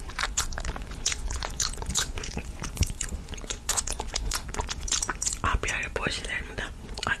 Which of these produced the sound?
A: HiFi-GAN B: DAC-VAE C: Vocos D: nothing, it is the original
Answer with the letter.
C